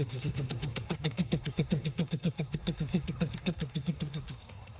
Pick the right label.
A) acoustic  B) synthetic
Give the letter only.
B